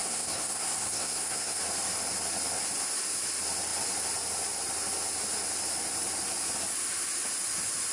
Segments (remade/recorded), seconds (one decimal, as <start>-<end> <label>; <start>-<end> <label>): 0.0-1.6 remade; 1.6-7.9 recorded